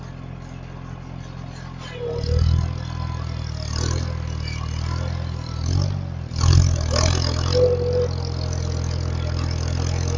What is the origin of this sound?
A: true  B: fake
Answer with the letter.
A